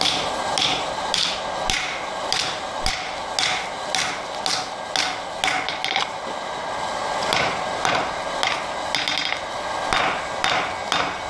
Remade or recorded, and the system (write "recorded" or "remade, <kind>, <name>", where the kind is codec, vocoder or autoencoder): recorded